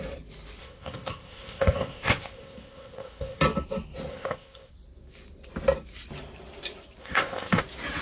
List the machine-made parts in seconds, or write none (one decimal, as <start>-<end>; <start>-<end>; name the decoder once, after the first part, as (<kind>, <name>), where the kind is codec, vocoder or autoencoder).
0.6-3.4 (codec, ZipCodec); 4.1-4.7; 7.0-7.6